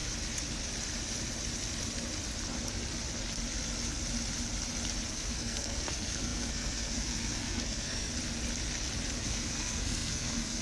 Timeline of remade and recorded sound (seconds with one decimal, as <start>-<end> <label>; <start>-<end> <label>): 0.0-5.1 recorded; 5.1-8.1 remade; 8.1-9.2 recorded; 9.2-10.6 remade